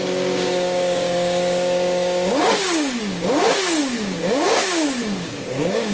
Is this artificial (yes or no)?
yes